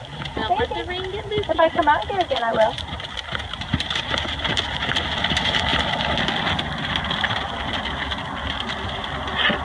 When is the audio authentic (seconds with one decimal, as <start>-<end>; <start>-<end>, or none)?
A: 0.0-9.6